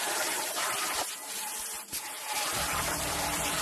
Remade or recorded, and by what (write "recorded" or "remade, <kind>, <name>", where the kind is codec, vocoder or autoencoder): remade, vocoder, BigVGAN v2